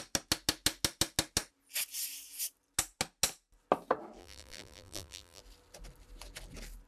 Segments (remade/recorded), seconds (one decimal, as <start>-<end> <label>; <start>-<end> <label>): 0.0-4.2 recorded; 4.2-5.4 remade; 5.4-6.9 recorded